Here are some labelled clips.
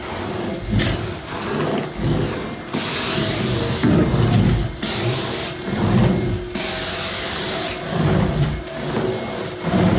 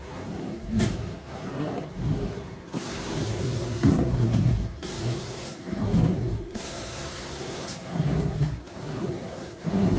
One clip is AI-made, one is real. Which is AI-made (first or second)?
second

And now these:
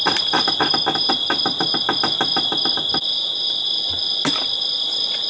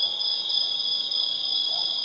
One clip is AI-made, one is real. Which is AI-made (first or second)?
second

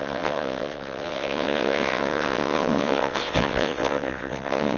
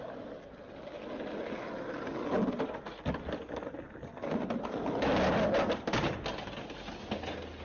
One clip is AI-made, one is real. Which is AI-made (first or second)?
first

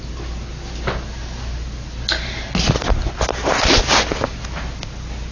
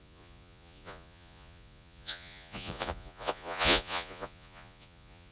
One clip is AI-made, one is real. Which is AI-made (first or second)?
second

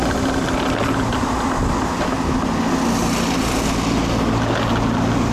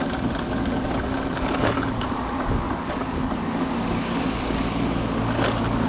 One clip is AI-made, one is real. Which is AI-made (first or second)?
second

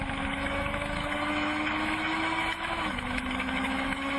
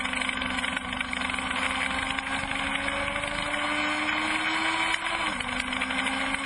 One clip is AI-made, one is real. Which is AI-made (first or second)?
first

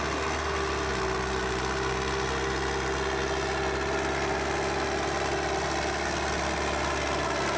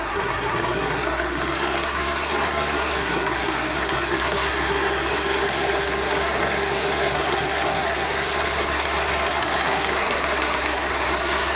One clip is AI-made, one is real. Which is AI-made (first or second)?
second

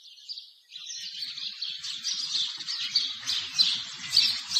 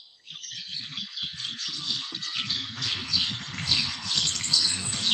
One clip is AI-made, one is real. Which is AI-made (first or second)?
second